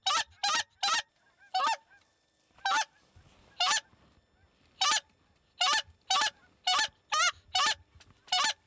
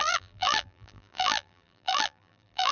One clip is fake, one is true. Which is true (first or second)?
first